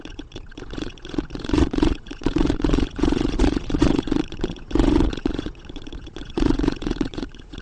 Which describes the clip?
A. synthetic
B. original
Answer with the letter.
A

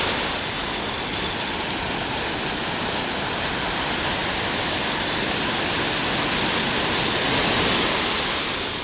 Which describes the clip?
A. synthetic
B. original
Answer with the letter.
B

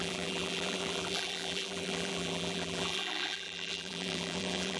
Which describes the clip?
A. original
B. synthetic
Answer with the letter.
B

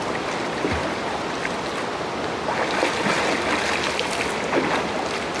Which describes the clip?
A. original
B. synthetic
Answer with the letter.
A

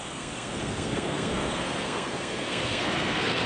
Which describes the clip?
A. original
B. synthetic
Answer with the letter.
B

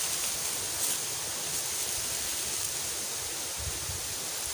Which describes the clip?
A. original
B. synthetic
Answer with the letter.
A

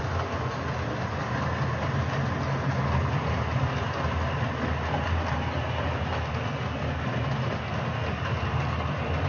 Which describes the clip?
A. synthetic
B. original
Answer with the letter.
B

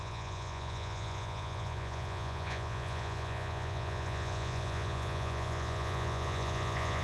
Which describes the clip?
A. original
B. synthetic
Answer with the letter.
B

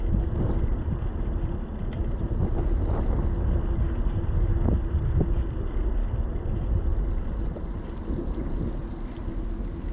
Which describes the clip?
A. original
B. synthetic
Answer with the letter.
A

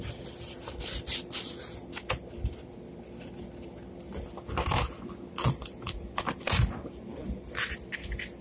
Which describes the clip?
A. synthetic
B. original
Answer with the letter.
B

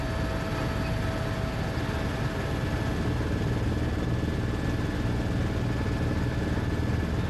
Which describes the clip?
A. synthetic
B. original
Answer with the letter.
B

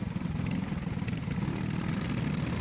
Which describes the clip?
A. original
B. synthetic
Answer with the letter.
A